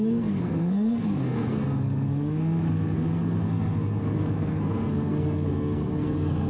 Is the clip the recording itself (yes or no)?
no